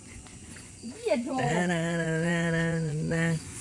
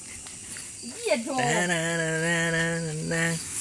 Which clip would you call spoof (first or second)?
first